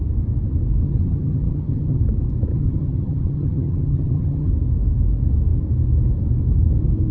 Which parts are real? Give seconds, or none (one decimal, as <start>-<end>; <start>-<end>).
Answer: 0.0-0.8; 2.0-2.5; 4.5-7.1